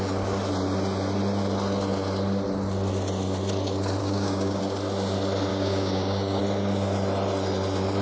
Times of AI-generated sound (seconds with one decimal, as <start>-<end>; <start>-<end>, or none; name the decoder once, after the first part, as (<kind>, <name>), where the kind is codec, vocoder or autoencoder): 4.0-4.6 (codec, DAC); 5.5-6.4